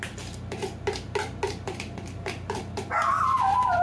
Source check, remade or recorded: recorded